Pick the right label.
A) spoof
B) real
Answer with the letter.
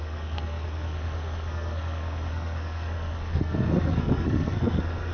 A